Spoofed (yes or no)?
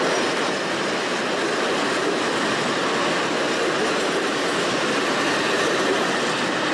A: no